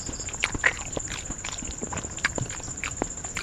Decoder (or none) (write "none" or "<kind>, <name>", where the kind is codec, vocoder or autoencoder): none